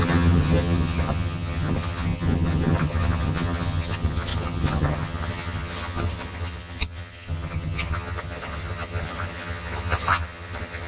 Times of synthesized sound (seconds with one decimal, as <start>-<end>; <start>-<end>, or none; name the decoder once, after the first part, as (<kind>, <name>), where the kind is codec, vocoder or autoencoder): 0.0-10.9 (vocoder, HiFi-GAN)